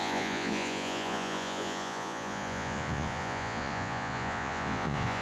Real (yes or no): no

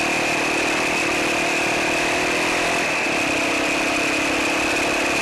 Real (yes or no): yes